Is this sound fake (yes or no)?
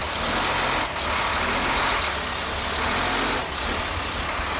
no